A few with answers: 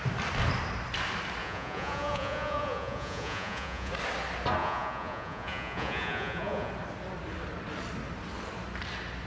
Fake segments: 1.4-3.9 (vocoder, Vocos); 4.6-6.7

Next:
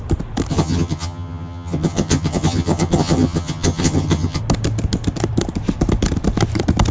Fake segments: 0.5-4.4 (vocoder, HiFi-GAN)

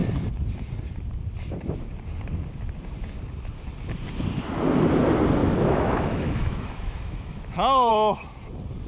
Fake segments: 5.4-7.9 (autoencoder, DAC-VAE)